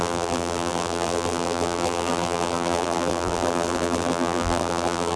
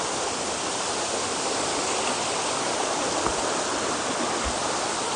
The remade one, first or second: first